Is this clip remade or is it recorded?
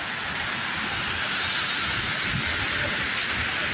recorded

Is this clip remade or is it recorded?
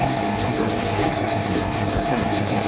remade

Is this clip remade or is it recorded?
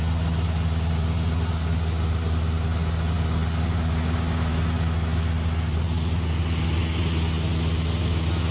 recorded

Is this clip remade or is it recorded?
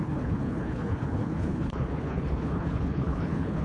remade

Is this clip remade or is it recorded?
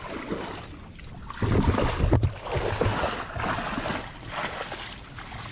recorded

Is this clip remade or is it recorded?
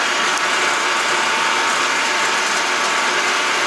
recorded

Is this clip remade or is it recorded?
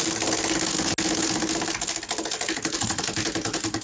recorded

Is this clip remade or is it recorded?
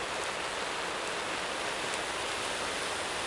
recorded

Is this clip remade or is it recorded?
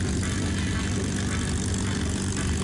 recorded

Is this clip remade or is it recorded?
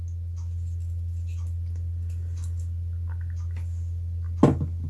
recorded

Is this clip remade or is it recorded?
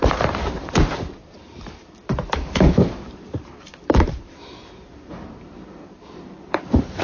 remade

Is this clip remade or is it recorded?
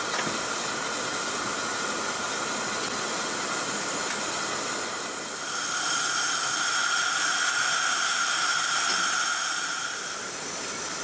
recorded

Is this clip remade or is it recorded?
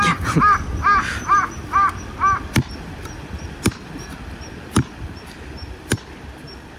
recorded